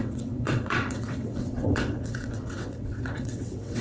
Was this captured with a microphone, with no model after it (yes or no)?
no